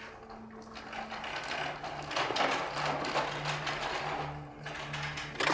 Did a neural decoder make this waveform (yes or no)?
no